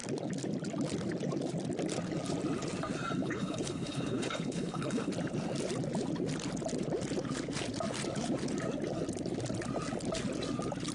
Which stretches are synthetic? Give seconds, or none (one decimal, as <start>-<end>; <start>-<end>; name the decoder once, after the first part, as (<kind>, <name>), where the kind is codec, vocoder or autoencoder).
3.2-5.1 (codec, HILCodec)